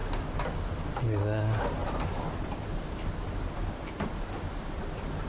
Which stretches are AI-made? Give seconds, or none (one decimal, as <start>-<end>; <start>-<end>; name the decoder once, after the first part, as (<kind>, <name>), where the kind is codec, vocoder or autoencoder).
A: 1.8-4.0 (vocoder, BigVGAN v2)